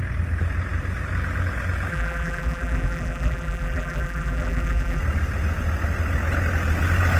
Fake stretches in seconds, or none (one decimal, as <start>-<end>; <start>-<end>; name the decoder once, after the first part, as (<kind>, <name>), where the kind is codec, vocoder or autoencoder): 1.9-5.0 (vocoder, BigVGAN v2)